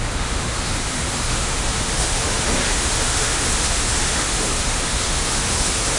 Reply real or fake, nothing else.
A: fake